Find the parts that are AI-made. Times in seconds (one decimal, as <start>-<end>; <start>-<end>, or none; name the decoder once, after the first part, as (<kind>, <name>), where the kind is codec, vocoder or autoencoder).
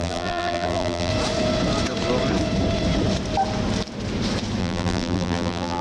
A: 0.0-1.1 (vocoder, BigVGAN v2); 4.6-5.8